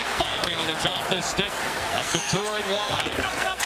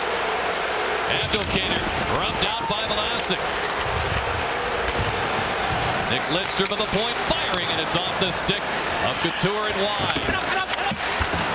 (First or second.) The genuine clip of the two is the second